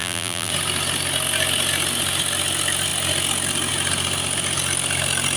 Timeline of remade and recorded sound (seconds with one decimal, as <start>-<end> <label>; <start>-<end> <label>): 0.0-0.5 remade; 0.5-5.4 recorded